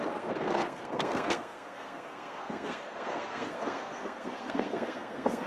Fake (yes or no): yes